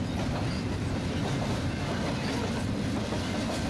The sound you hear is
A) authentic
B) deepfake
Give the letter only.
A